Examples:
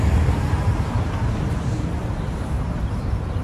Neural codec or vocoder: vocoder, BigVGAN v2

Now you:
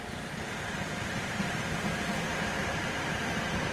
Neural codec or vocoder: none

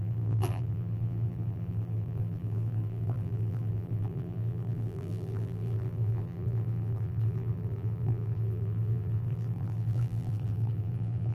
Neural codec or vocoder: vocoder, BigVGAN v2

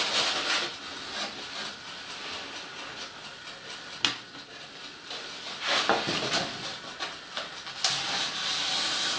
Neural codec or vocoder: none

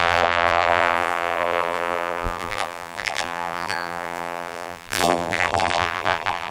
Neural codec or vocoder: vocoder, BigVGAN v2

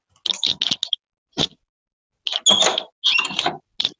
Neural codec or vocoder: none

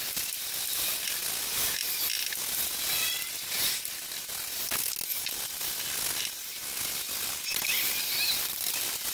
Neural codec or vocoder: none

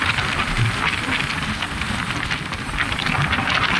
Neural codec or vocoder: none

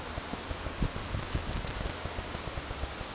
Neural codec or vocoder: none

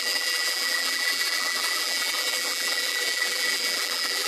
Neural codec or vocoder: vocoder, BigVGAN v2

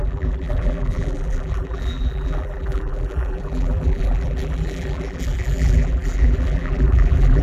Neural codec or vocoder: vocoder, BigVGAN v2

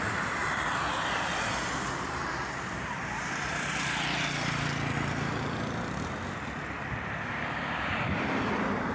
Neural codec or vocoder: vocoder, BigVGAN v2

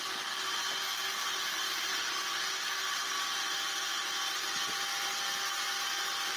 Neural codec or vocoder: none